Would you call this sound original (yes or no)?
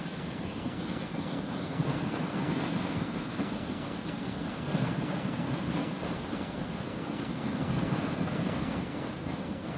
no